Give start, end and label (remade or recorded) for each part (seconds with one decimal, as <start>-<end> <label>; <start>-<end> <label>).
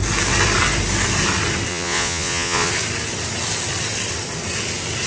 0.0-1.7 recorded; 1.7-2.7 remade; 2.7-5.1 recorded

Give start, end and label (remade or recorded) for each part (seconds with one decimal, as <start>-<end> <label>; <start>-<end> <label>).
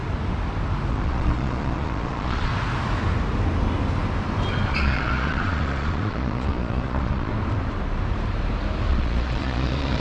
0.0-0.9 recorded; 0.9-2.5 remade; 2.5-4.7 recorded; 4.7-7.3 remade; 7.3-8.9 recorded; 8.9-10.0 remade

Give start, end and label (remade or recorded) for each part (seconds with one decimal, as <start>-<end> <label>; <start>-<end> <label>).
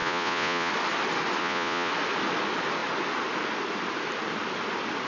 0.0-0.7 remade; 0.7-1.4 recorded; 1.4-1.9 remade; 1.9-5.1 recorded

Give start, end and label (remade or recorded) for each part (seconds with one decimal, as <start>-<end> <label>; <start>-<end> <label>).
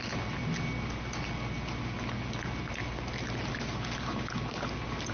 0.0-5.1 recorded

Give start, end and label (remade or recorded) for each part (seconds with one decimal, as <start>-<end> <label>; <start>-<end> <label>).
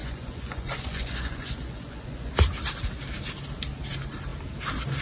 0.0-2.3 remade; 2.3-5.0 recorded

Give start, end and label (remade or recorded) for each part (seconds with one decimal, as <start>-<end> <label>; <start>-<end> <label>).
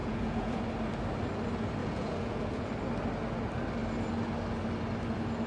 0.0-0.6 remade; 0.6-1.8 recorded; 1.8-2.7 remade; 2.7-5.5 recorded